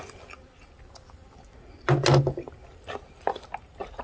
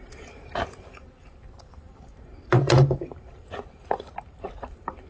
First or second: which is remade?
second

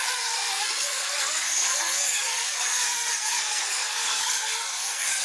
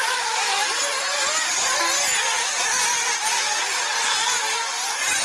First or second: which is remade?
first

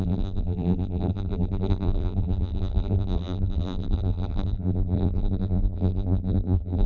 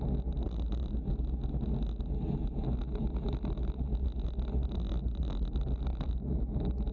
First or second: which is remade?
first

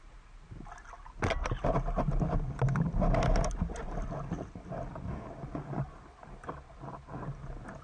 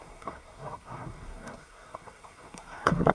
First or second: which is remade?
second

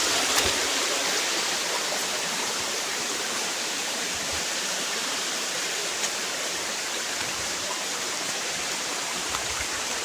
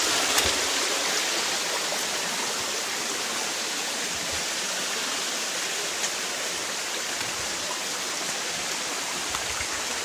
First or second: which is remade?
first